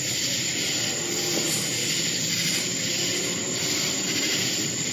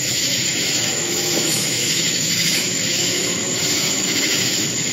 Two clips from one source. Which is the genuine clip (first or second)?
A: first